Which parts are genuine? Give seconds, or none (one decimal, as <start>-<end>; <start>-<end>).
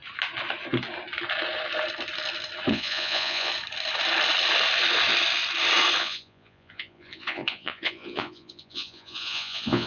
0.0-2.7; 3.5-6.0